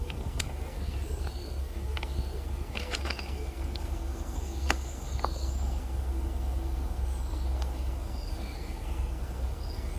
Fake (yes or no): yes